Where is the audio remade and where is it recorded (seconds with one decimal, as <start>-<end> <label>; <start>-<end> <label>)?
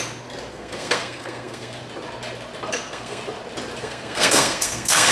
0.0-0.5 recorded; 0.5-1.8 remade; 1.8-2.7 recorded; 2.7-3.2 remade; 3.2-3.8 recorded; 3.8-5.1 remade